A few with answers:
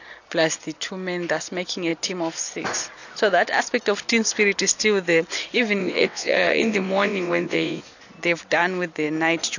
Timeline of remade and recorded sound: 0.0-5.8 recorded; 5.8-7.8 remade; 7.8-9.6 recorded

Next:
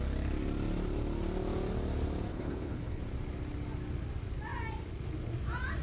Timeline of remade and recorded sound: 0.0-2.3 recorded; 2.3-3.0 remade; 3.0-5.8 recorded

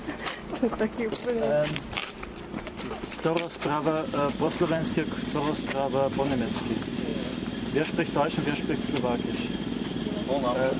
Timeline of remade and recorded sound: 0.0-0.8 recorded; 0.8-4.8 remade; 4.8-6.4 recorded; 6.4-7.1 remade; 7.1-9.6 recorded; 9.6-10.8 remade

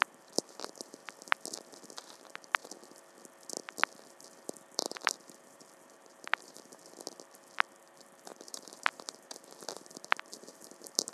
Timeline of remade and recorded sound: 0.0-1.0 remade; 1.0-1.9 recorded; 1.9-2.6 remade; 2.6-4.7 recorded; 4.7-6.8 remade; 6.8-7.8 recorded; 7.8-11.1 remade

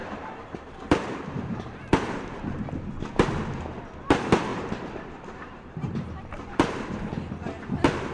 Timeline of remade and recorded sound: 0.0-2.7 remade; 2.7-4.5 recorded; 4.5-7.0 remade; 7.0-8.1 recorded

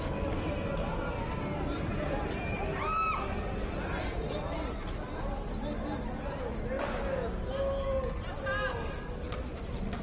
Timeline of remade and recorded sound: 0.0-10.0 recorded

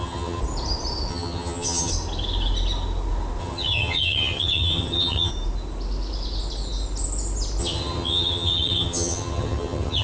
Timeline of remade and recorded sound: 0.0-0.4 remade; 0.4-1.1 recorded; 1.1-1.9 remade; 1.9-3.4 recorded; 3.4-5.3 remade; 5.3-7.6 recorded; 7.6-10.0 remade